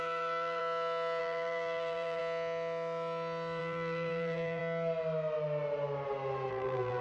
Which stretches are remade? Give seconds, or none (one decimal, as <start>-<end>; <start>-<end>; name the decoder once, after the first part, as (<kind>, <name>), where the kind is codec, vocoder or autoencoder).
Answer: 0.0-0.6 (vocoder, BigVGAN v2); 1.2-2.2; 3.6-4.6; 6.5-7.0